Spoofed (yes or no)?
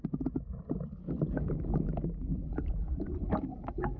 no